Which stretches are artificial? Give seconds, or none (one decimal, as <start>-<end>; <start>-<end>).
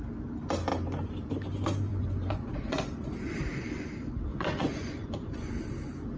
1.9-3.1; 4.3-5.5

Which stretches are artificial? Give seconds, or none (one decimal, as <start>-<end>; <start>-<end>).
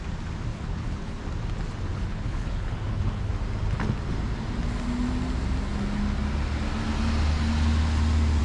0.5-1.2; 1.9-3.3